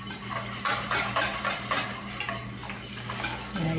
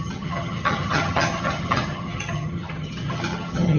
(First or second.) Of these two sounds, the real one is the first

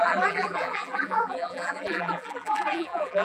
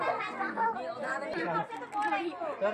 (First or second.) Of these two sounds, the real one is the second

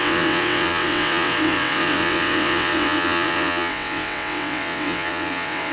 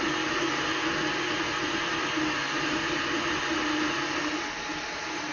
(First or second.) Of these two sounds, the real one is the second